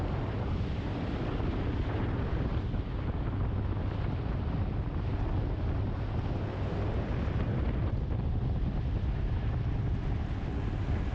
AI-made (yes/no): no